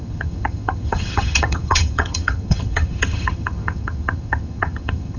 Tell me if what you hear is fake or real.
fake